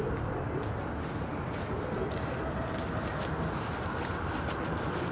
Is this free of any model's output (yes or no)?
yes